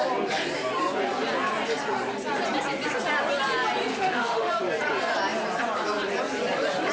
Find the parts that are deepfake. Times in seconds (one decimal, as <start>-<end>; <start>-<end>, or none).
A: 3.9-4.5

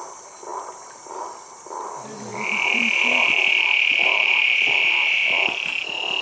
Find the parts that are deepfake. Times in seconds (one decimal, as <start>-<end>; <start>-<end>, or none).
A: 2.3-5.7

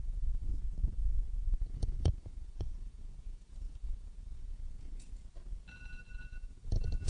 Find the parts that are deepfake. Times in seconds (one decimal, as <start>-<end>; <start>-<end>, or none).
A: 0.0-0.5; 1.6-5.2; 6.2-7.1

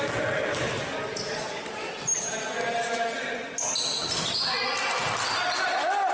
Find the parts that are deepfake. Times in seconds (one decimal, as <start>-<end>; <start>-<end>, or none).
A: none

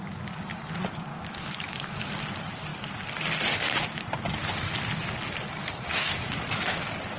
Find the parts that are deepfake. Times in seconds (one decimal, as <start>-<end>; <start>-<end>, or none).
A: 1.1-1.9

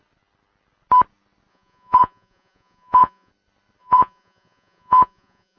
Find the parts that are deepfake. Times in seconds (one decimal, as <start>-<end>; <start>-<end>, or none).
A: 1.5-3.3; 3.8-5.6